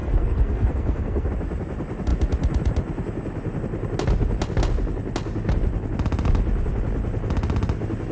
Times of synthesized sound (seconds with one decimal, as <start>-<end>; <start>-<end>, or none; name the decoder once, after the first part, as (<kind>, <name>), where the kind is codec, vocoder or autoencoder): 0.0-1.3 (codec, SNAC)